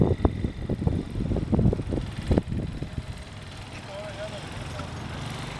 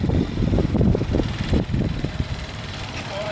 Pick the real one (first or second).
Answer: first